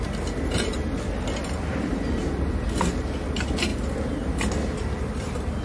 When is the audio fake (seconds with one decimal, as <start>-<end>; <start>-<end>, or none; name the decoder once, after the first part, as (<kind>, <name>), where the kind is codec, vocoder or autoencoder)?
1.9-2.5 (vocoder, BigVGAN v2)